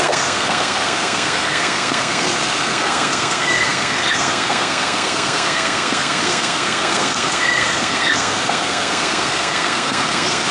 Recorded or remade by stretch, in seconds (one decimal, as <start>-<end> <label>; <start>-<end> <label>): 0.0-10.5 remade

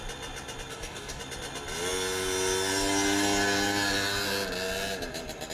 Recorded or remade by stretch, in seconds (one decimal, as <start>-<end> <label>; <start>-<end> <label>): 0.0-0.7 recorded; 0.7-1.2 remade; 1.2-5.5 recorded

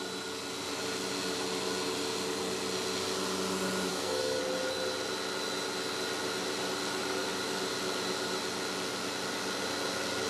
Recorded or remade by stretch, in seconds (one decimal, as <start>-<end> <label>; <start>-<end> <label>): 0.0-3.9 recorded; 3.9-4.4 remade; 4.4-10.3 recorded

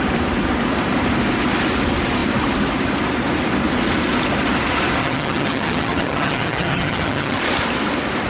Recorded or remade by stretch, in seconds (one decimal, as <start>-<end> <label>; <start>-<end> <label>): 0.0-5.0 recorded; 5.0-7.4 remade; 7.4-8.3 recorded

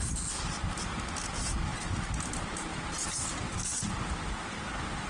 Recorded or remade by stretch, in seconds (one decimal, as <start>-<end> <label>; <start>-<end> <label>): 0.0-5.1 recorded

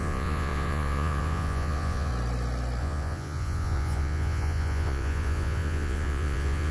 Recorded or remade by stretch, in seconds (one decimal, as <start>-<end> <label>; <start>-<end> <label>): 0.0-2.1 remade; 2.1-2.8 recorded; 2.8-6.7 remade